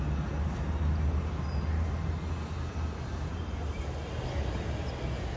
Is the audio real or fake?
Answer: real